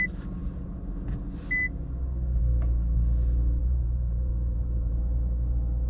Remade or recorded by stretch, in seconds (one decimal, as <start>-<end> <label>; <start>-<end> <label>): 0.0-3.6 recorded; 3.6-4.9 remade; 4.9-5.9 recorded